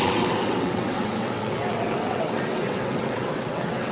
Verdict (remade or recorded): remade